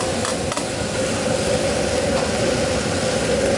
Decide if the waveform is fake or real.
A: real